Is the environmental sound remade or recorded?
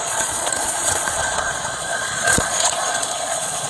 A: remade